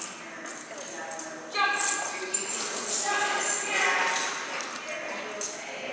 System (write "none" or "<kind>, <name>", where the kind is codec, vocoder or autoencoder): none